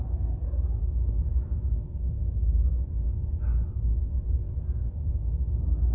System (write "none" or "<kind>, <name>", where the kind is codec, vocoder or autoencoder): none